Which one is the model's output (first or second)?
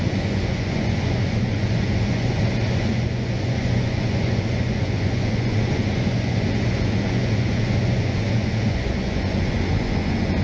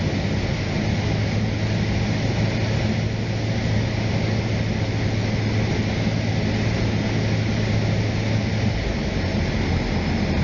first